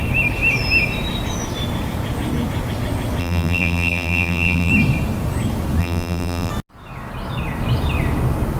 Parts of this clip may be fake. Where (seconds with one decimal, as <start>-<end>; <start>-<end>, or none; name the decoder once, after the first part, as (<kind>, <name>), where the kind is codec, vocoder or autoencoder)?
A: 3.2-4.7 (vocoder, BigVGAN v2); 5.8-6.5